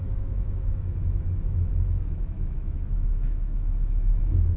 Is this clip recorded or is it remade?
remade